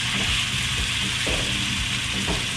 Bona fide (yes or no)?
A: yes